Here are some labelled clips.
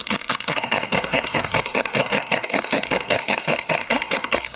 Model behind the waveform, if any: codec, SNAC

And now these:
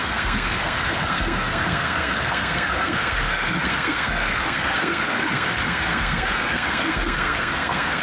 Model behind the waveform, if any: codec, SNAC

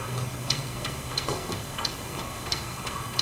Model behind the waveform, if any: codec, SNAC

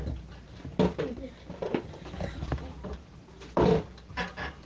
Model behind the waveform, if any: none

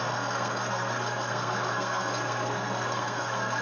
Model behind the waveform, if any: codec, SNAC